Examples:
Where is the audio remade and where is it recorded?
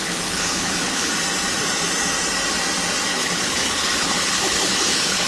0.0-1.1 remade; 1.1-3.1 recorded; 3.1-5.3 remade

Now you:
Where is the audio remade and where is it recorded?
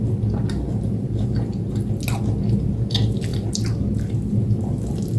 0.0-5.2 recorded